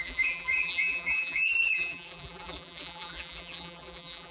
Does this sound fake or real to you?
fake